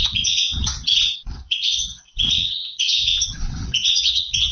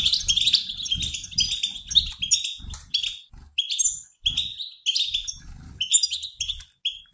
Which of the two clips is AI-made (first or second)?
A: first